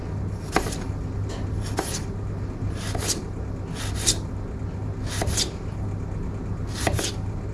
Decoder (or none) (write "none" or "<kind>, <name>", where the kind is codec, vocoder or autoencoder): none